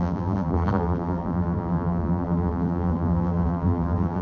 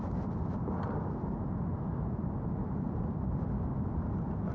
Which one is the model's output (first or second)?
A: first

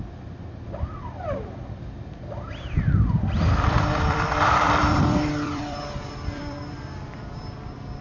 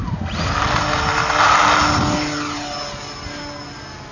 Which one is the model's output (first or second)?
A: first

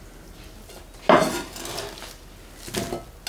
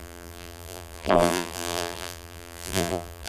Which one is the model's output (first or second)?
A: second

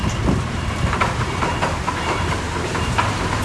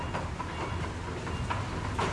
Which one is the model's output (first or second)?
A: first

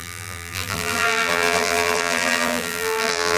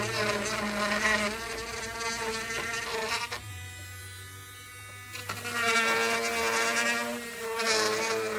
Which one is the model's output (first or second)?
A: first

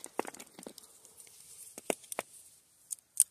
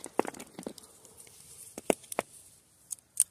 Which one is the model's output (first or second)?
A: second